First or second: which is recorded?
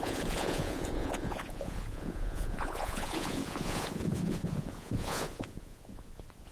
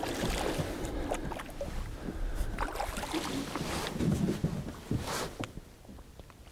second